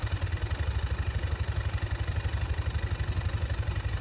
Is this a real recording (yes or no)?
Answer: yes